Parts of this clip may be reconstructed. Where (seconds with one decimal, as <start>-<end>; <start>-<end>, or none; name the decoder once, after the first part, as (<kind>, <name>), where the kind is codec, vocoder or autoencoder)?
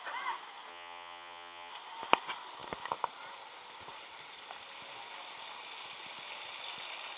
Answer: 0.7-1.7 (vocoder, HiFi-GAN)